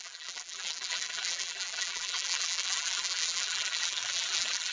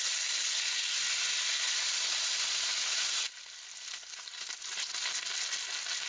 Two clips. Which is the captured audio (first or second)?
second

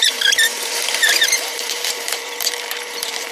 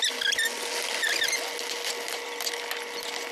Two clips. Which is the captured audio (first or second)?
second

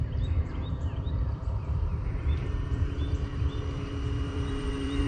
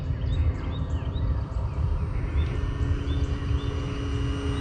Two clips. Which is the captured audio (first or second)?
second